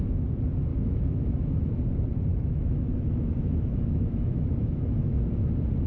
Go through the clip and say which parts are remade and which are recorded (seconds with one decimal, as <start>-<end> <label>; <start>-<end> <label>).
0.0-0.7 recorded; 0.7-1.7 remade; 1.7-2.3 recorded; 2.3-5.3 remade; 5.3-5.9 recorded